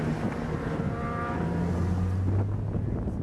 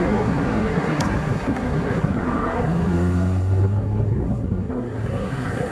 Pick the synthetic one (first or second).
second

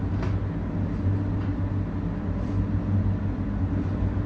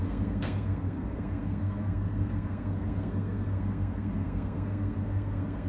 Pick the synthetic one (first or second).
second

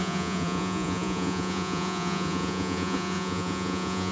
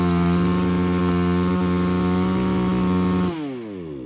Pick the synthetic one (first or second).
first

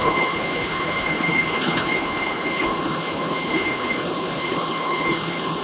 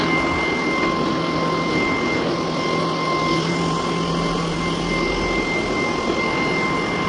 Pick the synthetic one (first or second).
first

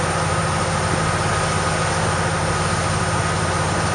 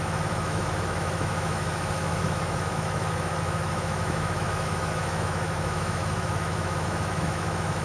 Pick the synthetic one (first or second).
second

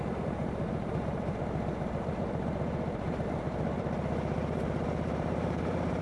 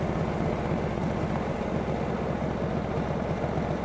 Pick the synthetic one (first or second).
first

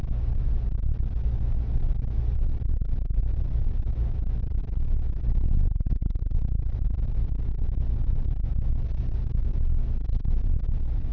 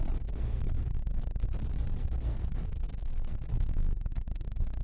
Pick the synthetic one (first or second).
second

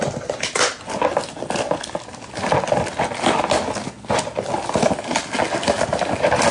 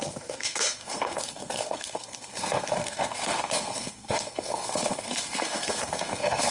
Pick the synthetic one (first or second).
second